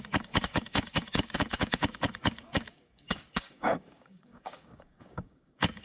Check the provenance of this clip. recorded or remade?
remade